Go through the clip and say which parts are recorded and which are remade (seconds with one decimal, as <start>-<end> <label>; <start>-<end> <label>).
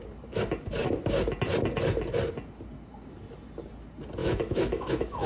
0.0-4.2 recorded; 4.2-5.3 remade